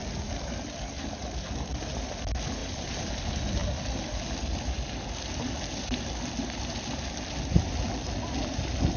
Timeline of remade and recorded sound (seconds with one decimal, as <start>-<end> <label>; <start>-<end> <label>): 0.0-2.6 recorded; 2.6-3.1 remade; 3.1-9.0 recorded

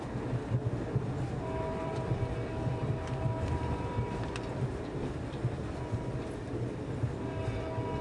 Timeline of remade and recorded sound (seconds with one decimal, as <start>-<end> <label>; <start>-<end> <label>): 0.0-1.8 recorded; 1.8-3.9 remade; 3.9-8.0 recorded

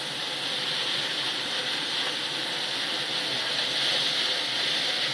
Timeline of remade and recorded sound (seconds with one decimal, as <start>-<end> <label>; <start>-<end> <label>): 0.0-0.8 recorded; 0.8-3.9 remade; 3.9-5.1 recorded

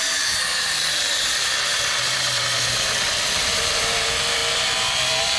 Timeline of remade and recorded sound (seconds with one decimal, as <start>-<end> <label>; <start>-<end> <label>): 0.0-4.4 remade; 4.4-4.9 recorded; 4.9-5.4 remade

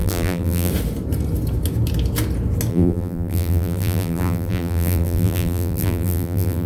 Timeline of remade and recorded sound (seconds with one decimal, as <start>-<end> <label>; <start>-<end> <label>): 0.0-0.7 remade; 0.7-2.7 recorded; 2.7-6.7 remade

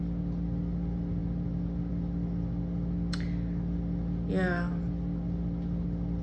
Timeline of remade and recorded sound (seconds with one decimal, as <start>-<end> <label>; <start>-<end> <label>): 0.0-6.2 recorded

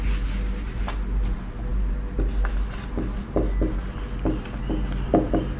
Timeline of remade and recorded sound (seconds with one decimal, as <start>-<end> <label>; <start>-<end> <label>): 0.0-5.6 recorded

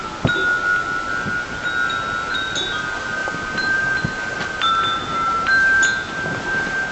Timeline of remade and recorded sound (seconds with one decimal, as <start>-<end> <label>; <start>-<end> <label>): 0.0-3.2 recorded; 3.2-4.7 remade; 4.7-6.9 recorded